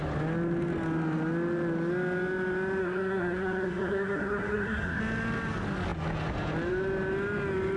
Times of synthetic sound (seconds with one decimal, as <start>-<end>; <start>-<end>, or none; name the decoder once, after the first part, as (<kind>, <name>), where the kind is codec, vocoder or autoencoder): 2.8-5.0 (codec, SNAC)